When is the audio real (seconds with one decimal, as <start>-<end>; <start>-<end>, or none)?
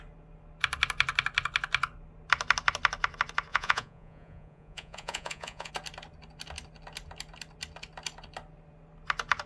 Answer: 0.0-3.5; 5.7-9.5